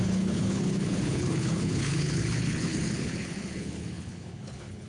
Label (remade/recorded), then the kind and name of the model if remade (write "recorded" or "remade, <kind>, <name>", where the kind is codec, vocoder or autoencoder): remade, codec, HILCodec